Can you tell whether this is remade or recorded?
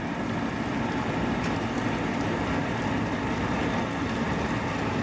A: recorded